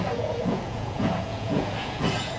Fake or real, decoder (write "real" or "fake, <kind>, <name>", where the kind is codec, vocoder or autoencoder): fake, vocoder, Vocos